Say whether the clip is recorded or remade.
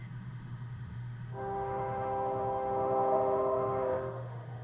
remade